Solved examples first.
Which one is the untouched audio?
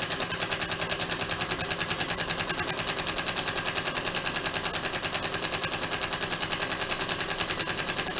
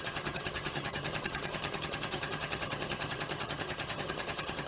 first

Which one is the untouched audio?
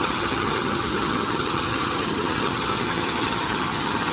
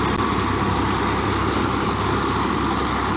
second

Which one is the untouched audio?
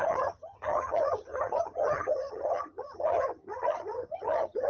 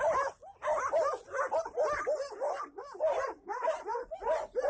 second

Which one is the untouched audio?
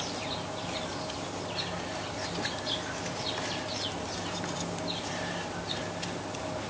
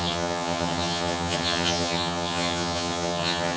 first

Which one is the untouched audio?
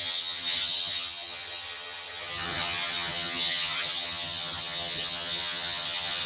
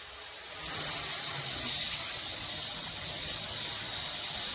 second